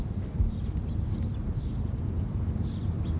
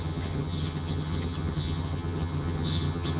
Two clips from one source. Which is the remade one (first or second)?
second